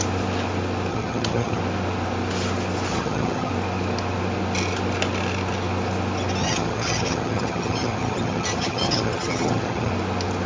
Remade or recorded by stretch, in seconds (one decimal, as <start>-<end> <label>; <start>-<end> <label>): 0.0-0.9 recorded; 0.9-1.6 remade; 1.6-2.9 recorded; 2.9-3.5 remade; 3.5-6.4 recorded; 6.4-9.9 remade; 9.9-10.5 recorded